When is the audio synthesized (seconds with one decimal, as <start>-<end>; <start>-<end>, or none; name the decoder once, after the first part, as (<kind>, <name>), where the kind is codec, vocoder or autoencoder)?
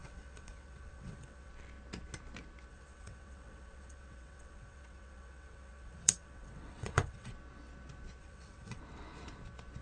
0.0-1.5 (vocoder, WaveNeXt); 2.7-7.3; 8.2-8.8